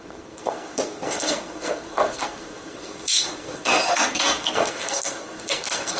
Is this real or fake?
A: fake